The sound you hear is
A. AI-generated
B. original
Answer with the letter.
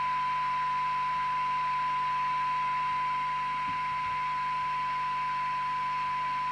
B